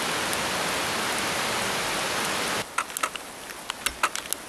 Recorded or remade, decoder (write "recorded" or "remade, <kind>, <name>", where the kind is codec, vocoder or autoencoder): recorded